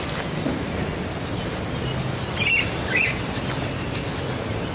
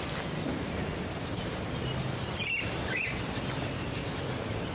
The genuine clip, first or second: first